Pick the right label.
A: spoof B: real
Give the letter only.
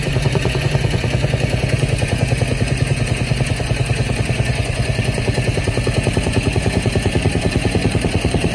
A